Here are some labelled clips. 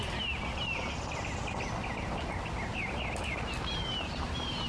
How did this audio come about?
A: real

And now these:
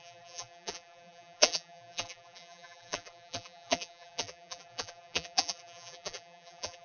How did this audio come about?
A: fake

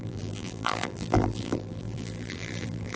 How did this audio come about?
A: fake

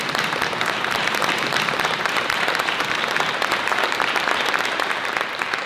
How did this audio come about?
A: fake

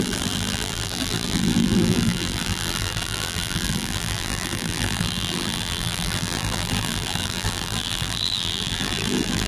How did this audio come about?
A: fake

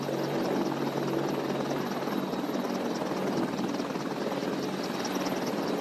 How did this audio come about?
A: real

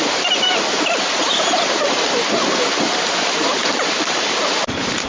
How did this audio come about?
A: fake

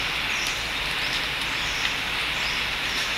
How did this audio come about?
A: real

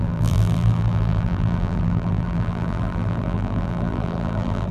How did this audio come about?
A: fake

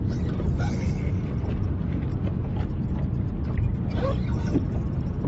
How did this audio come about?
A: real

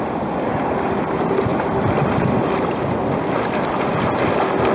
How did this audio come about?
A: real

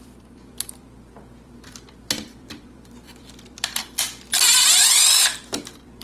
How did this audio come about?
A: fake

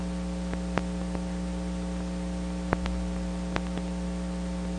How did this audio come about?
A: real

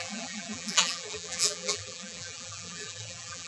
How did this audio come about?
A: fake